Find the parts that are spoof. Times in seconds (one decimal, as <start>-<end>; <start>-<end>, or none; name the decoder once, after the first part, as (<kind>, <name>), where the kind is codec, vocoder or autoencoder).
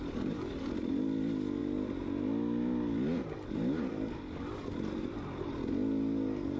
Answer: none